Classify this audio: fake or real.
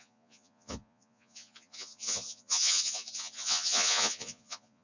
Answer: fake